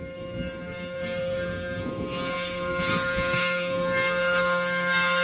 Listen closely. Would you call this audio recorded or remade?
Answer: remade